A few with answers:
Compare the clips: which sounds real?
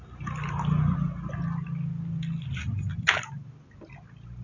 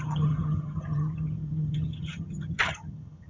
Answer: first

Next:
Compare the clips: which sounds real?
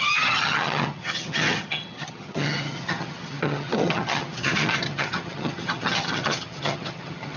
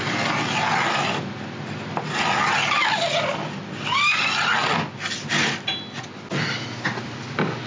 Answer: second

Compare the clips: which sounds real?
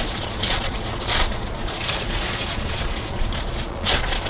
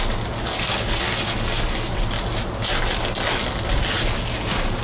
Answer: second